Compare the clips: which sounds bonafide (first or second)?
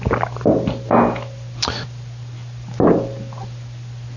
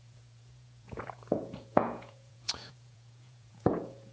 first